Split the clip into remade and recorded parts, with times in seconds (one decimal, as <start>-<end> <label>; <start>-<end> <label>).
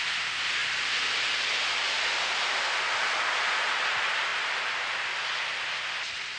0.0-6.4 recorded